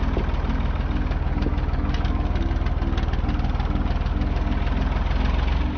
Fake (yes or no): no